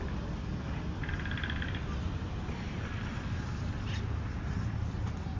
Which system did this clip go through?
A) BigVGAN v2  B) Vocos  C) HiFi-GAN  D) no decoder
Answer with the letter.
D